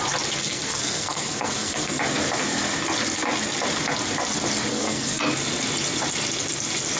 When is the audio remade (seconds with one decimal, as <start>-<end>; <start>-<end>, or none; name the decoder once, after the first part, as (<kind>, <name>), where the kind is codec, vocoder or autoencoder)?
0.4-2.0 (codec, SNAC); 4.7-5.2